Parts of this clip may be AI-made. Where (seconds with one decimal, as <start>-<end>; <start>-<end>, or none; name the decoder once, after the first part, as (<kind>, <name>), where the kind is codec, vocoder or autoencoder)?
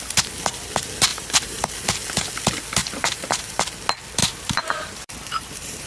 1.1-1.7 (vocoder, BigVGAN v2); 2.8-3.6; 4.2-5.9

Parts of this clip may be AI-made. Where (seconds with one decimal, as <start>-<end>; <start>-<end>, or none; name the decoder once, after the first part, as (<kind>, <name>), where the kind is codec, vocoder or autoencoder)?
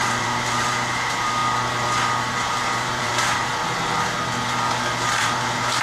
0.0-1.4 (vocoder, BigVGAN v2); 2.3-3.5; 5.2-5.8